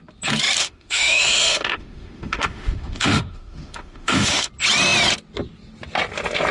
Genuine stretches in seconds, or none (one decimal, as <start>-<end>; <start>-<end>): 0.0-0.6; 4.5-6.5